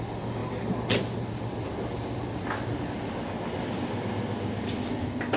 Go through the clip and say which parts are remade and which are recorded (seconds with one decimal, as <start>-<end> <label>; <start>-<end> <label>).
0.0-5.4 recorded